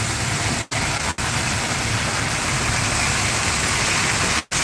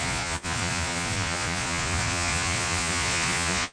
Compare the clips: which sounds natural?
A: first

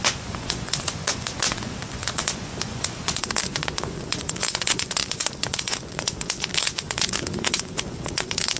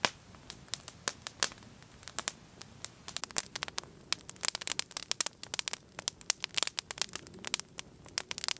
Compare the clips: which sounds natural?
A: second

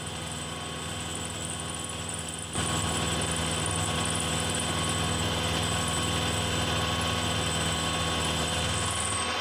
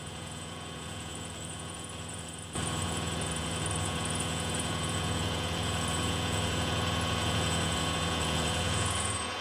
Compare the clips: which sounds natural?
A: first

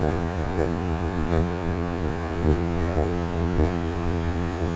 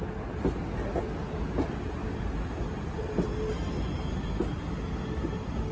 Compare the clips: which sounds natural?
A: second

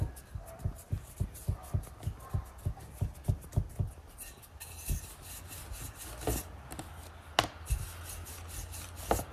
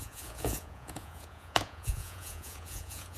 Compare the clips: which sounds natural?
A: first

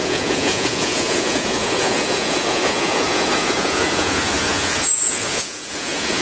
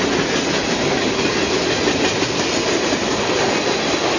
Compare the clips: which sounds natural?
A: second